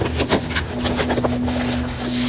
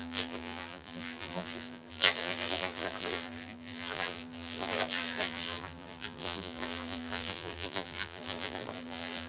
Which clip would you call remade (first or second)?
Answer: second